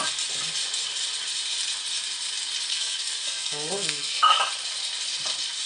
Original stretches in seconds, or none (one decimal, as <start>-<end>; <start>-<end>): 0.0-2.7; 4.4-5.7